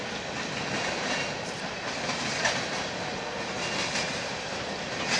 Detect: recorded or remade recorded